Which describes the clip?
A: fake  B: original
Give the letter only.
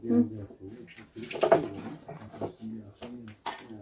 B